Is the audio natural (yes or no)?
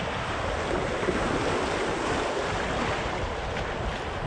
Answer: yes